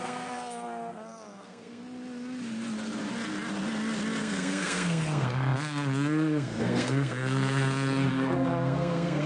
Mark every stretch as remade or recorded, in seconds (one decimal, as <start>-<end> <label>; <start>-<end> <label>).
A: 0.0-1.8 remade; 1.8-4.2 recorded; 4.2-9.3 remade